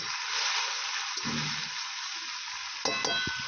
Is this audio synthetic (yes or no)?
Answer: no